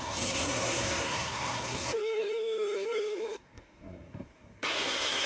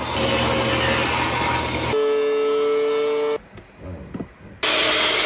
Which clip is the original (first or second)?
second